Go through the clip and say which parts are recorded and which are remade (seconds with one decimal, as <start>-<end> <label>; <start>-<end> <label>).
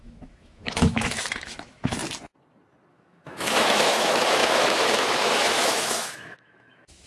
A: 0.0-2.0 remade; 2.0-2.9 recorded; 2.9-7.1 remade